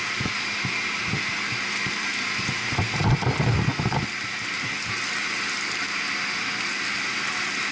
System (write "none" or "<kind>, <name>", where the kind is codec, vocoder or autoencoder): none